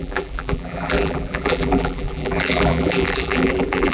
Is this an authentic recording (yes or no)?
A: no